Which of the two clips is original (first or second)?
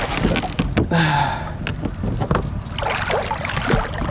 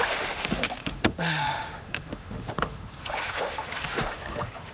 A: first